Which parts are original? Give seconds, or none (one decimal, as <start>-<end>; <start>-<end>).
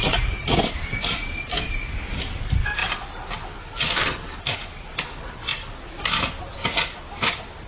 0.6-7.7